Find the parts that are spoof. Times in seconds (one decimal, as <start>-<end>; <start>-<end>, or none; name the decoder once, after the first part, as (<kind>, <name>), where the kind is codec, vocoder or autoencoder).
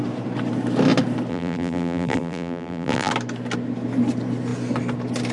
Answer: 1.3-3.1 (vocoder, BigVGAN v2)